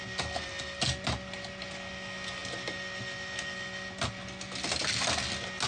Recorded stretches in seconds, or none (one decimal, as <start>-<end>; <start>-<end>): 0.0-5.7